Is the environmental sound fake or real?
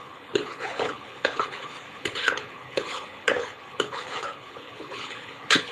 fake